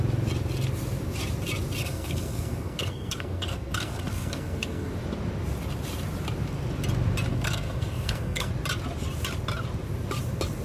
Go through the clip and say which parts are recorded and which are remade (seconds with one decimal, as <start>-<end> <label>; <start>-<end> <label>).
0.0-1.8 recorded; 1.8-4.9 remade; 4.9-7.3 recorded; 7.3-8.5 remade; 8.5-10.6 recorded